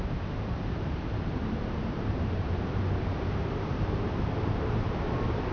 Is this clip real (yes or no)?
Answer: no